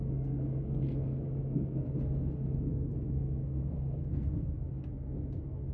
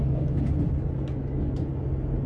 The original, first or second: second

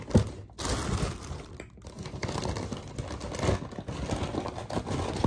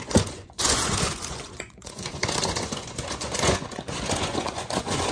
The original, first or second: first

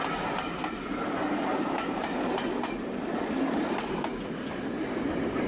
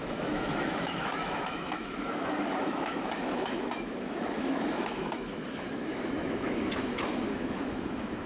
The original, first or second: first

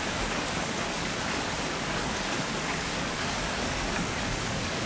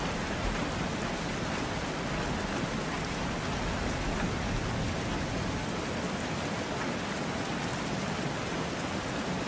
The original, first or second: second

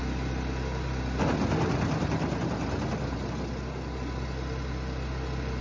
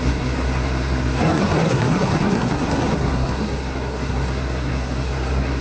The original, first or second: first